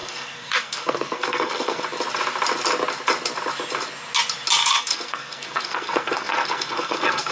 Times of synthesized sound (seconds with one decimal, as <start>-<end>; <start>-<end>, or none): 0.0-1.8; 4.6-7.3